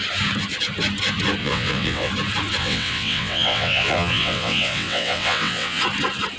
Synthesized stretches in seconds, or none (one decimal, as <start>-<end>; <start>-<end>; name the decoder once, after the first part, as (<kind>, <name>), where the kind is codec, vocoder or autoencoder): 1.4-2.1 (vocoder, WaveNeXt); 2.6-5.8